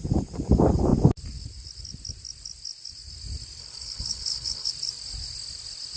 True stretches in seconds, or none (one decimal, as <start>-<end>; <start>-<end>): 0.0-3.6; 4.7-6.0